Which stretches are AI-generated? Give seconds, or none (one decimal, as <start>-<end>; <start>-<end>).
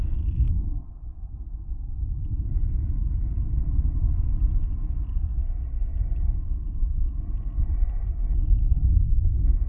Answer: none